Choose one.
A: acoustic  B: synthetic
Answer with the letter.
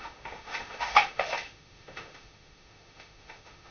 B